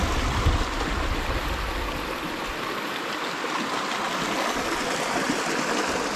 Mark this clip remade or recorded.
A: recorded